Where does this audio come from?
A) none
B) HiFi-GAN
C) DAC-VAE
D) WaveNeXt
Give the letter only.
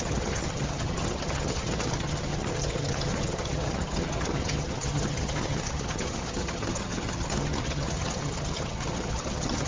B